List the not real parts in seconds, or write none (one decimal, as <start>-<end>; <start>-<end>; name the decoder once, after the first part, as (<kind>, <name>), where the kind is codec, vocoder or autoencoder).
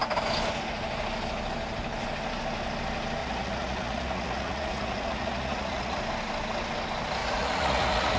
3.2-6.0 (vocoder, Vocos); 7.2-8.2